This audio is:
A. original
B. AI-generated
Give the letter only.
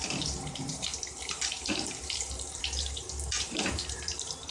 B